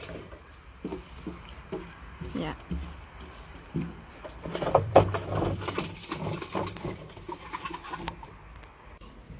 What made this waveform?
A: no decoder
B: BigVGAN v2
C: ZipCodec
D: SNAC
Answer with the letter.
B